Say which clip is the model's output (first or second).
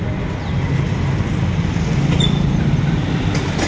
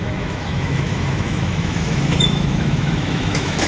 second